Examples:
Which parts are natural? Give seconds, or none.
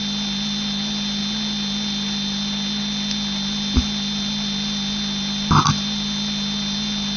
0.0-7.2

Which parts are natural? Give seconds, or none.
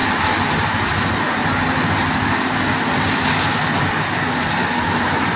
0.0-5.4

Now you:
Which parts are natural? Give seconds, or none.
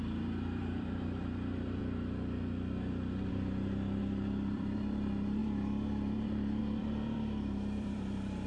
1.8-3.3